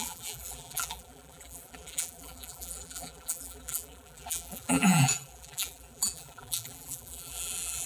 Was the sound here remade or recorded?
remade